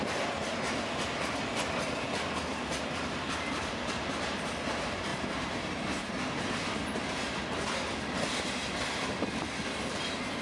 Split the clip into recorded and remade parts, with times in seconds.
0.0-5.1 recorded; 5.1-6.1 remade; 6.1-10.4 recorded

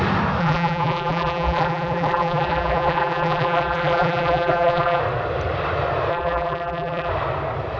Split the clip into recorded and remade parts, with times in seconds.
0.0-0.4 recorded; 0.4-5.0 remade; 5.0-6.1 recorded; 6.1-7.1 remade; 7.1-7.8 recorded

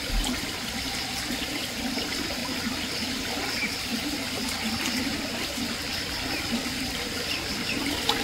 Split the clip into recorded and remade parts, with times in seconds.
0.0-2.4 remade; 2.4-3.4 recorded; 3.4-8.2 remade

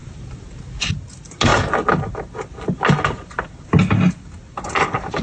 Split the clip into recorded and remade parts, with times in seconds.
0.0-1.5 remade; 1.5-4.6 recorded; 4.6-5.2 remade

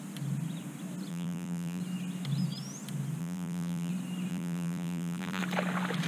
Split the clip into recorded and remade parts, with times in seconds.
0.0-1.1 recorded; 1.1-1.8 remade; 1.8-3.2 recorded; 3.2-3.9 remade; 3.9-4.3 recorded; 4.3-5.4 remade; 5.4-6.1 recorded